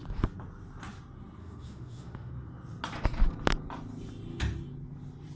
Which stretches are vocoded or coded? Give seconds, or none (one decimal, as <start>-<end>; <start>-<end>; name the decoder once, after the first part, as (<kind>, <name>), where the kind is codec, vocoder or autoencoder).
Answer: 1.4-2.3 (autoencoder, DAC-VAE)